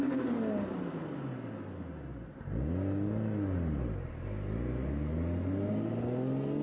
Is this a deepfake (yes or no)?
no